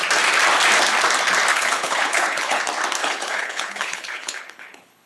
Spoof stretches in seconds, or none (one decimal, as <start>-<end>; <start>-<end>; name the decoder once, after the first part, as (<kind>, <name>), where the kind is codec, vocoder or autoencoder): 1.5-2.6 (codec, HILCodec); 3.0-5.1

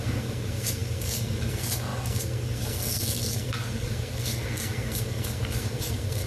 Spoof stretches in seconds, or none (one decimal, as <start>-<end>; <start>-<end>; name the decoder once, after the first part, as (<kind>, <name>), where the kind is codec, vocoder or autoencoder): 0.0-6.3 (codec, SNAC)